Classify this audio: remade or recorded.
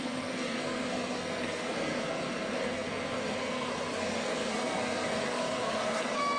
remade